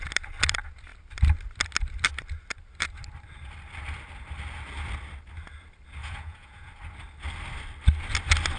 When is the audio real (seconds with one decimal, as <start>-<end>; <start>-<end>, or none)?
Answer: 0.0-6.0; 6.7-8.6